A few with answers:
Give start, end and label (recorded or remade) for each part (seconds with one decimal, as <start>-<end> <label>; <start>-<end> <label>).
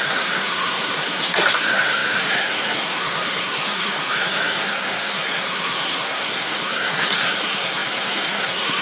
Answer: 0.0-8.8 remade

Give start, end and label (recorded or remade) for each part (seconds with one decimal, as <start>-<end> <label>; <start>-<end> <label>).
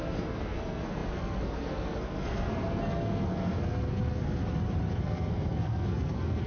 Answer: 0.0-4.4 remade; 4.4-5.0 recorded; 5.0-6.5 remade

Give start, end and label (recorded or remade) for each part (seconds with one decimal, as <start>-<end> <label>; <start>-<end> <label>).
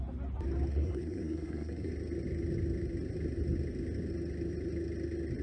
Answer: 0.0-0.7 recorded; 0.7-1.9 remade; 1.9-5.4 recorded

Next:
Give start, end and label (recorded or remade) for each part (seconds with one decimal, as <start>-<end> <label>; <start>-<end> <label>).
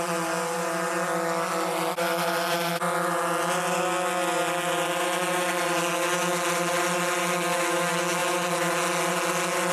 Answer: 0.0-9.7 recorded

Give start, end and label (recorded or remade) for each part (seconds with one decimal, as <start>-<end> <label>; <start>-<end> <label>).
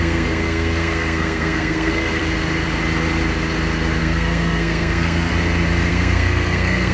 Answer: 0.0-2.2 remade; 2.2-4.0 recorded; 4.0-5.3 remade; 5.3-5.9 recorded; 5.9-6.9 remade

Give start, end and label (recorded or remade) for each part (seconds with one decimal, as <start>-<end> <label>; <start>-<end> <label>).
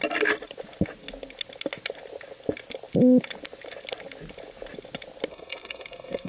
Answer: 0.0-5.3 recorded; 5.3-6.3 remade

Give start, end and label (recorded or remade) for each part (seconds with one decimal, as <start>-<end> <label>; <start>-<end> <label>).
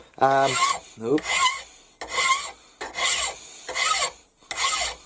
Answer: 0.0-5.1 recorded